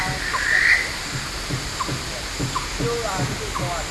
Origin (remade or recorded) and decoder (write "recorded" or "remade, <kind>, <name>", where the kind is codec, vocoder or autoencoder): recorded